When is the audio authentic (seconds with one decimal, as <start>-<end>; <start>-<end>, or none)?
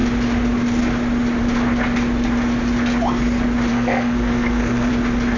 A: 0.0-3.7; 4.9-5.4